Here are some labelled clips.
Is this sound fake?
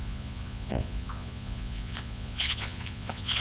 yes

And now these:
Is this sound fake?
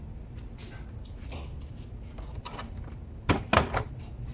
no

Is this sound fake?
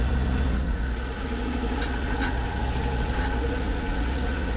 yes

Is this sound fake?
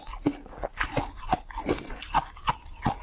no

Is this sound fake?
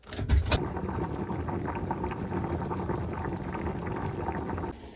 no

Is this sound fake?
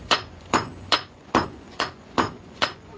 yes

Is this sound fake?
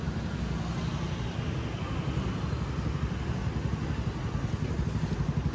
no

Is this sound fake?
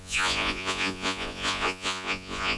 yes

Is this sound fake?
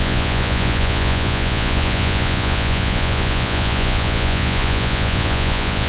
yes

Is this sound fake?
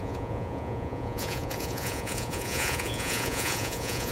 yes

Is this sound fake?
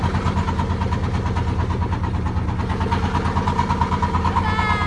no